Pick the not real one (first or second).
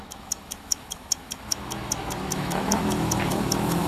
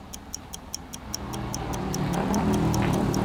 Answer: first